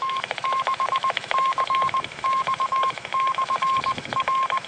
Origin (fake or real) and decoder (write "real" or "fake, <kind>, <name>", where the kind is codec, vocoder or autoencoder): fake, autoencoder, DAC-VAE